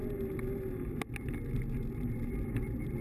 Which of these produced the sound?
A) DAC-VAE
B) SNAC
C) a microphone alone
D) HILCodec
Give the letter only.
C